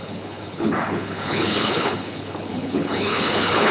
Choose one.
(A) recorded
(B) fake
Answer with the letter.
B